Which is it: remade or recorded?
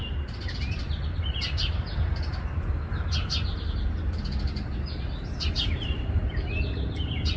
recorded